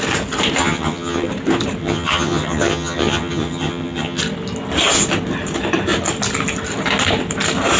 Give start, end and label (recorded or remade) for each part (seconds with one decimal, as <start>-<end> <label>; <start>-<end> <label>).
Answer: 0.0-0.6 recorded; 0.6-1.3 remade; 1.3-1.8 recorded; 1.8-4.2 remade; 4.2-7.8 recorded